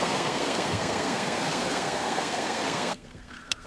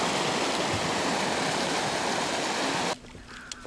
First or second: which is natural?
second